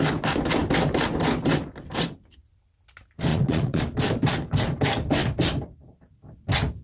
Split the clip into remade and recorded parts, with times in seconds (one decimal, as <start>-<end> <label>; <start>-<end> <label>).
0.0-3.3 recorded; 3.3-3.8 remade; 3.8-6.8 recorded